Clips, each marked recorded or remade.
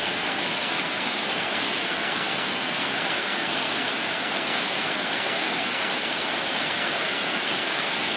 remade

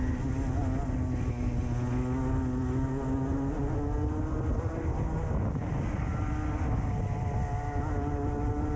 recorded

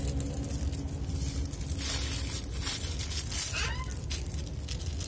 recorded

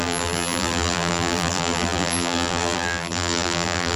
remade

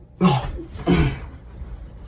recorded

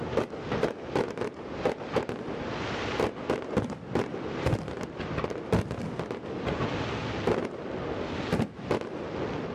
recorded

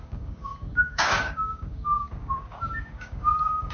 remade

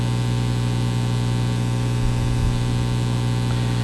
recorded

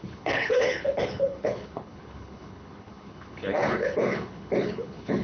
remade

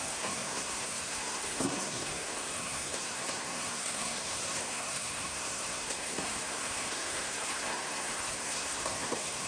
remade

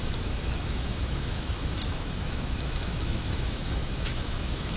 remade